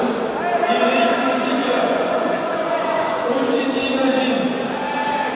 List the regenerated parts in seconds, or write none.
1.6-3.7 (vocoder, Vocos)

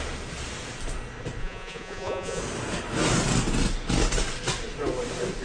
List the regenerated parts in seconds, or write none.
1.4-2.4 (vocoder, Vocos)